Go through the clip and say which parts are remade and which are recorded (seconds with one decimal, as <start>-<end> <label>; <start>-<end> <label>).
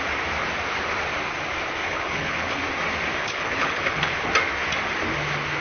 0.0-1.8 recorded; 1.8-2.6 remade; 2.6-3.2 recorded; 3.2-4.3 remade; 4.3-5.6 recorded